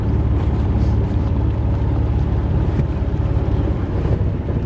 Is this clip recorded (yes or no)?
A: no